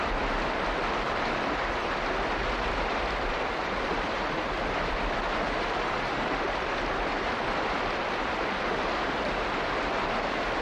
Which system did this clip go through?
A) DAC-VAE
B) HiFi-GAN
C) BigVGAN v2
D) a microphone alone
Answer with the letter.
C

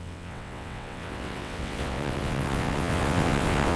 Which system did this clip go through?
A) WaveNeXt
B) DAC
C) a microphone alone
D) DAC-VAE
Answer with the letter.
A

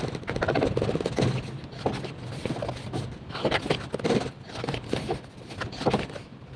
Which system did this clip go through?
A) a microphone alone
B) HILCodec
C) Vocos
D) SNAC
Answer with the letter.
A